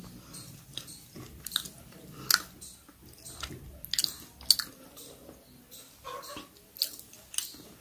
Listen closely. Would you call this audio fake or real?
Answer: real